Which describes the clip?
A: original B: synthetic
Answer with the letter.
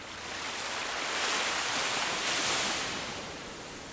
A